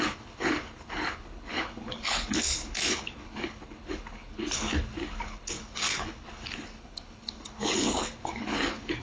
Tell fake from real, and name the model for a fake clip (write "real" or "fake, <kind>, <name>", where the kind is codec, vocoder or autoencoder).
fake, codec, HILCodec